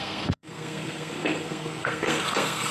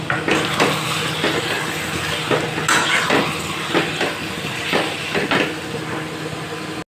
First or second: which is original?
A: second